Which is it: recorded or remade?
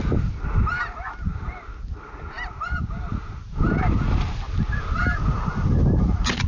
recorded